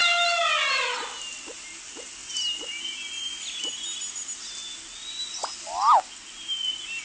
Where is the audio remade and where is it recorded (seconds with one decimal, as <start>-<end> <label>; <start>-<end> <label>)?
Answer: 0.0-7.0 recorded